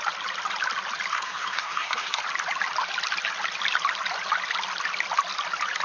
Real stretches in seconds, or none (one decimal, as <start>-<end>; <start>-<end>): 0.0-1.1; 2.2-5.8